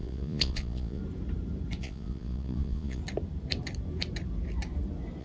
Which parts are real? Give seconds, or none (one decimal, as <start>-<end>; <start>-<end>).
1.0-1.8; 3.0-5.2